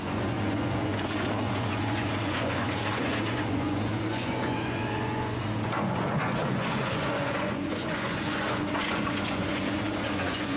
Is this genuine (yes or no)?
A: no